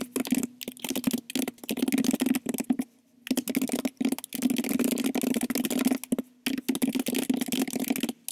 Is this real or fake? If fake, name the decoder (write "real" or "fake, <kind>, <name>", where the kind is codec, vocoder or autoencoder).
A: real